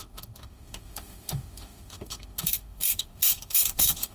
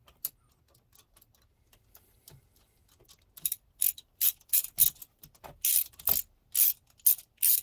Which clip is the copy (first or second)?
first